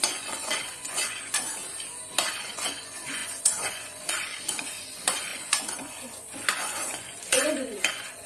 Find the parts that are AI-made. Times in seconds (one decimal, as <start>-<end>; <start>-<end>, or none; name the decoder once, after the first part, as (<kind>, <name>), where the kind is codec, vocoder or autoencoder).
0.0-1.6 (vocoder, Vocos); 2.4-8.3